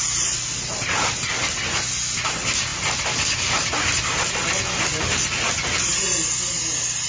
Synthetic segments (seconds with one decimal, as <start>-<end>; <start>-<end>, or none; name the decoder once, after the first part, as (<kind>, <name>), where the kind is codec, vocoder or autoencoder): none